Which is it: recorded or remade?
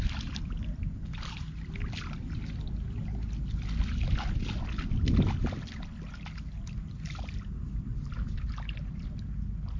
recorded